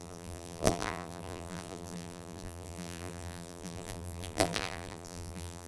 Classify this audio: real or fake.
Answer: fake